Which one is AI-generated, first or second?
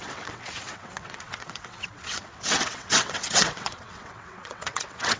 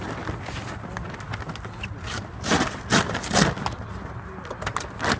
first